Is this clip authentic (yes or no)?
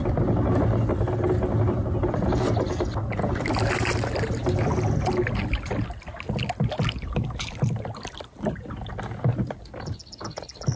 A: yes